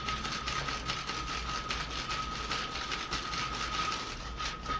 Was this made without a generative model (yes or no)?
yes